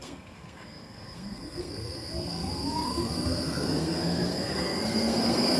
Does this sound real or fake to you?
fake